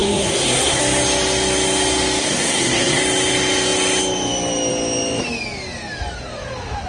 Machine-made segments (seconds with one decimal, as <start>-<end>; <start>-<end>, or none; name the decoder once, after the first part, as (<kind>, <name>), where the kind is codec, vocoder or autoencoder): 0.0-0.8 (codec, SNAC); 2.2-3.0